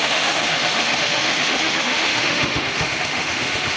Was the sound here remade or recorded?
remade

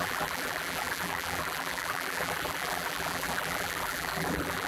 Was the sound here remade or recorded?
remade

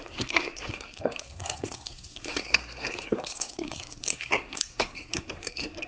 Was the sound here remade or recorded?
remade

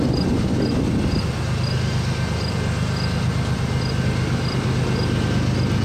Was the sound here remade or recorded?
recorded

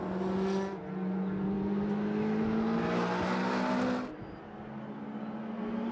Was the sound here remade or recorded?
recorded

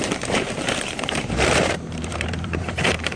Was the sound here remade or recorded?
remade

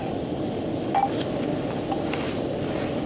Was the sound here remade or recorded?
recorded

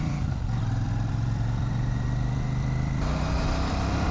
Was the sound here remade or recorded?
remade